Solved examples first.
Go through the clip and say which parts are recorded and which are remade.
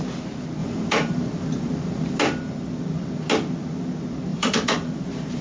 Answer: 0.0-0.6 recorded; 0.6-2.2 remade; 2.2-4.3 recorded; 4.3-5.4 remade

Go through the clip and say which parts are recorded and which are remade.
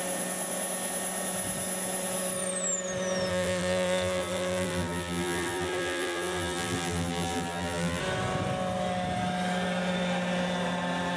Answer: 0.0-3.3 recorded; 3.3-8.0 remade; 8.0-11.2 recorded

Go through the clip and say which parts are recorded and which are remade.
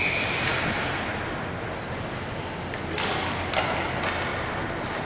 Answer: 0.0-4.3 recorded; 4.3-5.0 remade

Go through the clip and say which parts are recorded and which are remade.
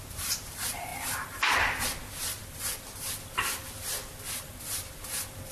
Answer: 0.0-5.5 recorded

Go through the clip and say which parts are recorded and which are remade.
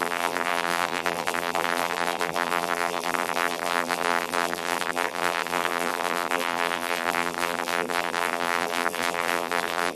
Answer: 0.0-10.0 remade